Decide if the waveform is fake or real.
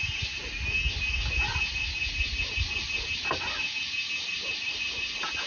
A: real